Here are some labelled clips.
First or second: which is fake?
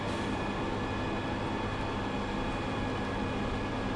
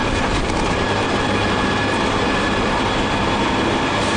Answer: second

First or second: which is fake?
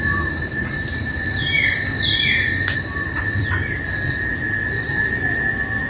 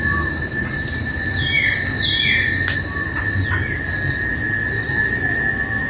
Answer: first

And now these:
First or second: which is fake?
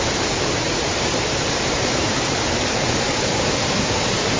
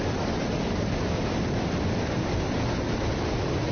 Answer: first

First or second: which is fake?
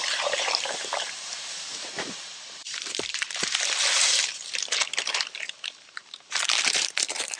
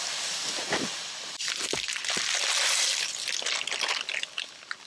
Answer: first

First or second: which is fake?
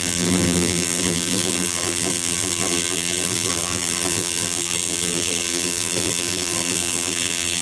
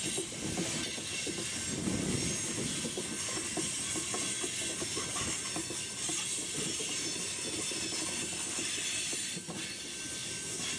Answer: first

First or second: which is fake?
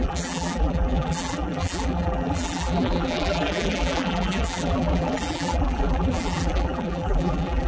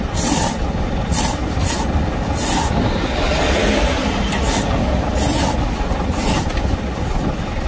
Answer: first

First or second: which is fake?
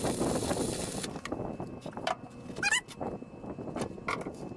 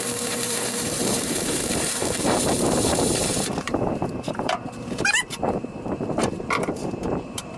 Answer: second